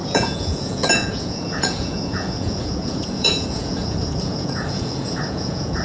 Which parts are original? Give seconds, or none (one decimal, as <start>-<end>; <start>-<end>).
none